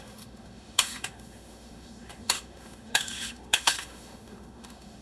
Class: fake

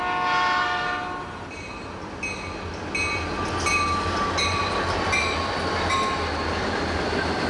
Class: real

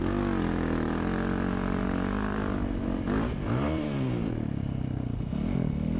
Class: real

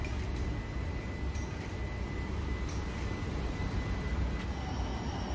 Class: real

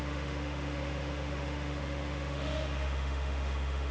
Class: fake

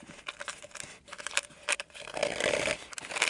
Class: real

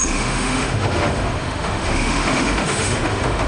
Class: fake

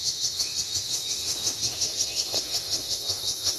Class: fake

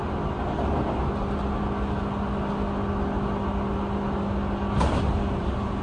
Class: real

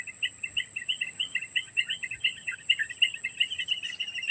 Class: real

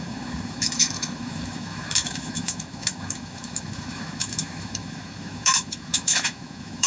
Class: fake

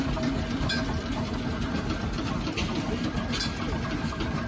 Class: real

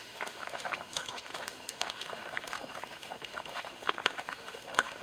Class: fake